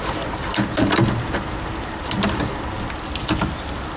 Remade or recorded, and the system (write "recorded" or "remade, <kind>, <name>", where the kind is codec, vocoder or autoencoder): recorded